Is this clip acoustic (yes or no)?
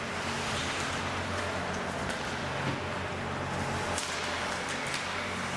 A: yes